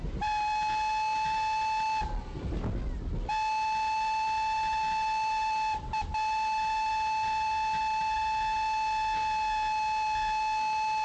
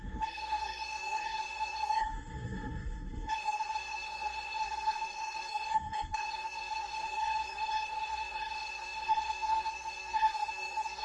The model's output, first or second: second